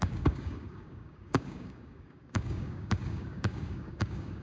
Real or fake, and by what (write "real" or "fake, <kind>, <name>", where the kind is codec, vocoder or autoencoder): fake, codec, DAC